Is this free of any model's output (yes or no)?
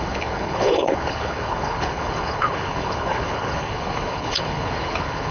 no